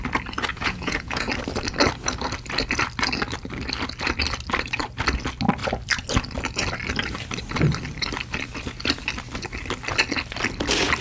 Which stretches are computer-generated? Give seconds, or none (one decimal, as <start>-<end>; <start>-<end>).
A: 0.5-1.3